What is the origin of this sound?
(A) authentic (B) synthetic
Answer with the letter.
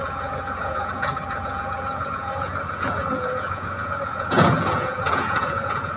B